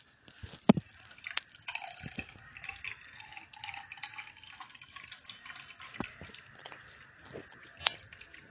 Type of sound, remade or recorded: remade